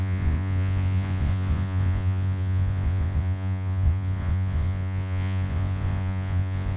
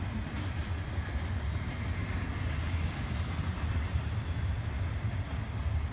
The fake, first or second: first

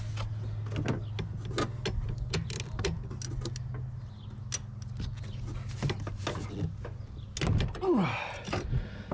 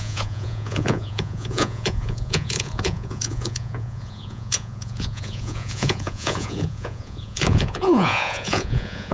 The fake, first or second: second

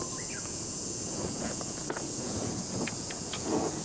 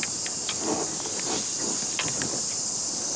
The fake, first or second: first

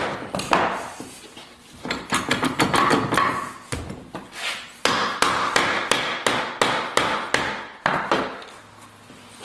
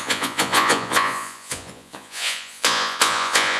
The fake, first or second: second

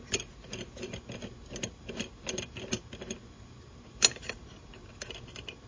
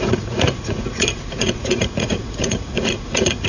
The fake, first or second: second